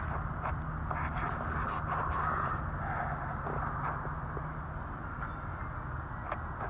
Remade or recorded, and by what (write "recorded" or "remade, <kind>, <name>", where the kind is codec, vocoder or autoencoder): recorded